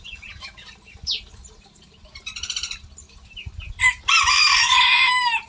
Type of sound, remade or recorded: remade